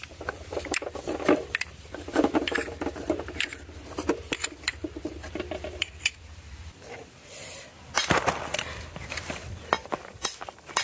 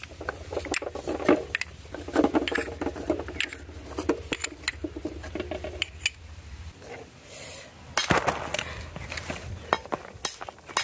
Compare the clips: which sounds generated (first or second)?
first